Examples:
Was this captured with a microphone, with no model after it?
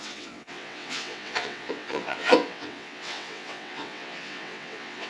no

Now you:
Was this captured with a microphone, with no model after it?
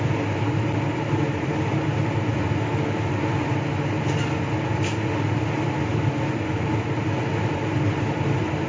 yes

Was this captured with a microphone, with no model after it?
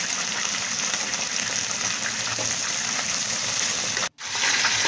yes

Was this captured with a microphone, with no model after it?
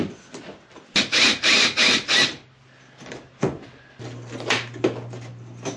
yes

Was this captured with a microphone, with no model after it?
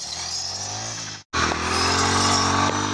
yes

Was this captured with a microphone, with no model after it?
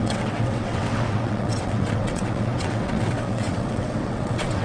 no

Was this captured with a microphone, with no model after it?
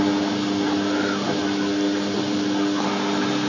yes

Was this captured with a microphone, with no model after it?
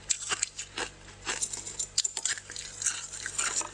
yes